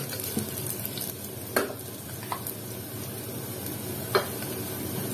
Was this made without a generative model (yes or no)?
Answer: yes